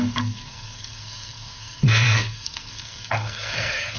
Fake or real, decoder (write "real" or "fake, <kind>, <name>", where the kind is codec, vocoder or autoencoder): fake, codec, SNAC